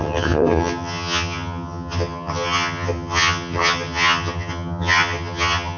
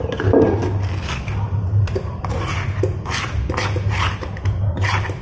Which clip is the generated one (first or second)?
first